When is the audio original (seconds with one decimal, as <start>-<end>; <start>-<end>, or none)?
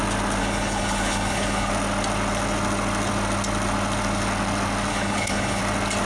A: 0.0-0.4; 1.7-4.9; 5.6-6.1